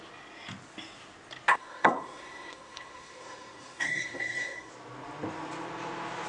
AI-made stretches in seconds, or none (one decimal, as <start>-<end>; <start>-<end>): 1.5-4.7